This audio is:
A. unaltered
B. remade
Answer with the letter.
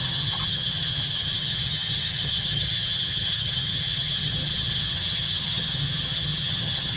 B